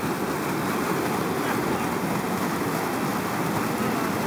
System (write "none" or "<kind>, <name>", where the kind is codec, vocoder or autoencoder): none